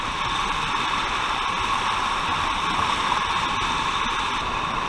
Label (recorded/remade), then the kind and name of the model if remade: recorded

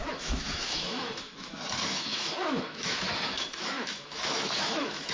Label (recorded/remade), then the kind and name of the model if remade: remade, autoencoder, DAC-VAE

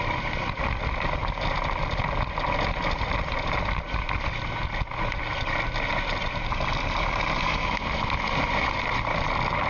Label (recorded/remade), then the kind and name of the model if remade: recorded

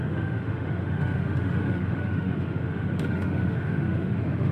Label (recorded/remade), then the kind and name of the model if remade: remade, autoencoder, DAC-VAE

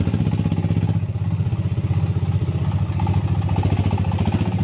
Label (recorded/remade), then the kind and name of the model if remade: recorded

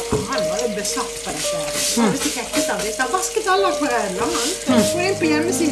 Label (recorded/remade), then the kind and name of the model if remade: recorded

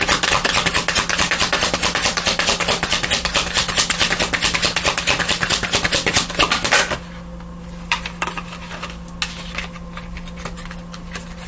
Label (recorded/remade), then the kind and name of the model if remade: recorded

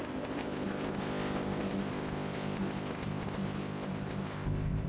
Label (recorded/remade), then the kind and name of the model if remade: remade, codec, ZipCodec